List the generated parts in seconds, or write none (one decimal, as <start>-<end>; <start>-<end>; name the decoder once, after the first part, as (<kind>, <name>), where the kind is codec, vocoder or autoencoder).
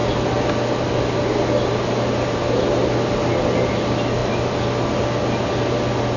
none